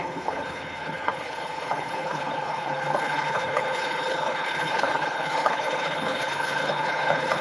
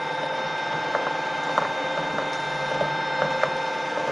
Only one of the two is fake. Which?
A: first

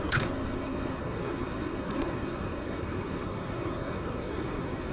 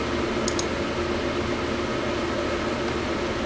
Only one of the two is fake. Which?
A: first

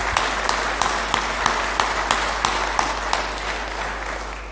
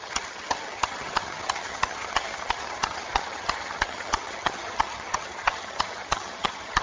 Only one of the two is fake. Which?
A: second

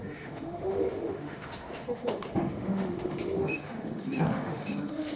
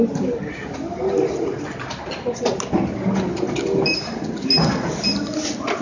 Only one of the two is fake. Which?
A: first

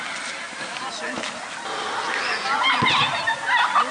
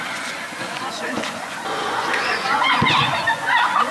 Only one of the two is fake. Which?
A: second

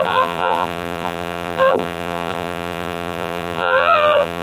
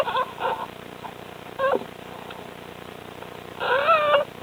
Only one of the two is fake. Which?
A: first